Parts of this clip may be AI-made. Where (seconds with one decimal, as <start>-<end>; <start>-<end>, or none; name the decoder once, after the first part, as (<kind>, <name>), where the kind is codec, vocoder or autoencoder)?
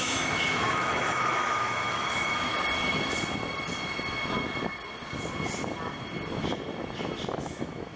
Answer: 0.0-2.5 (autoencoder, DAC-VAE); 7.3-8.0